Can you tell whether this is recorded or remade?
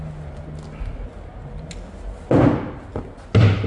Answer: recorded